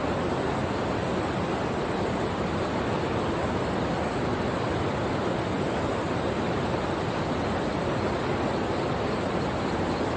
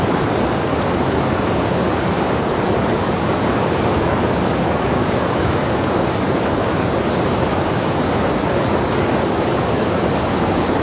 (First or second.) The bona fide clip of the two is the first